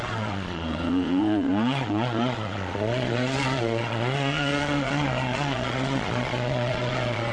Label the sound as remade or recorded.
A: remade